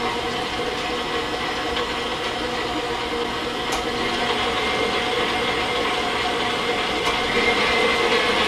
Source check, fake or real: real